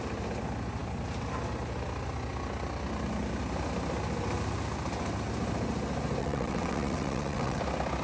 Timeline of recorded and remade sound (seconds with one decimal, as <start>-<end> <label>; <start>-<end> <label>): 0.0-6.2 recorded; 6.2-7.6 remade; 7.6-8.0 recorded